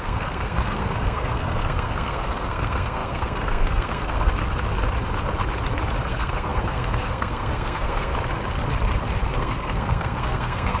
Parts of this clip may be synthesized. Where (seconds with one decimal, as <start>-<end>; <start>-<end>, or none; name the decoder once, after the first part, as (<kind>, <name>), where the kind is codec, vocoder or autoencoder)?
0.0-4.4 (codec, SNAC); 6.1-8.1; 9.3-10.8